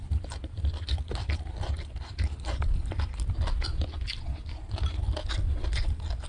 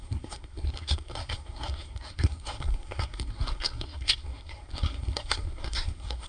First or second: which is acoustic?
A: first